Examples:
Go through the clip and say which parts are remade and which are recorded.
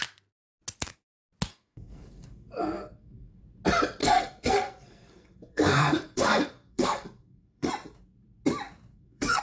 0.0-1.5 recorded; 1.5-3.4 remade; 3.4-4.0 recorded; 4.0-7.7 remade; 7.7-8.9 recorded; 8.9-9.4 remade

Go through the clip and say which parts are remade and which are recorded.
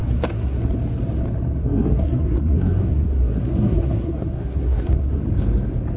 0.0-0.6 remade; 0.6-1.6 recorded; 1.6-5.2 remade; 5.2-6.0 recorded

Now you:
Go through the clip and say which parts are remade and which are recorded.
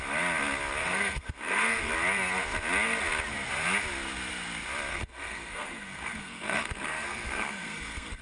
0.0-0.8 recorded; 0.8-1.9 remade; 1.9-4.9 recorded; 4.9-8.2 remade